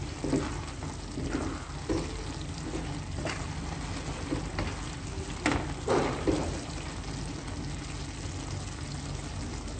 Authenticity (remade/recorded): recorded